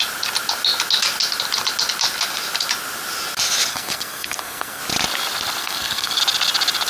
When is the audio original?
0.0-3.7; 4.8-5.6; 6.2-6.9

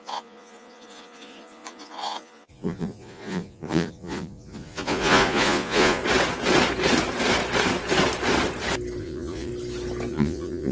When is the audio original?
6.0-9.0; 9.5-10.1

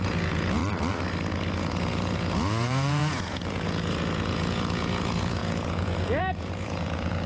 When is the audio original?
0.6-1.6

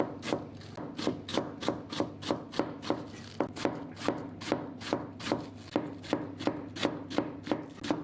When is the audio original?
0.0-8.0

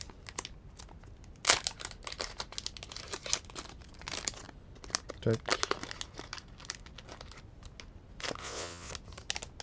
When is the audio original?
0.0-8.4; 8.9-9.6